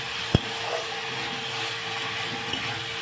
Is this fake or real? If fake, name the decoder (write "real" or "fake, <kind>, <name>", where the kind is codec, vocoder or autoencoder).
real